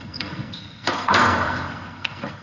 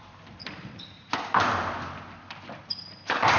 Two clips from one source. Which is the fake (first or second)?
first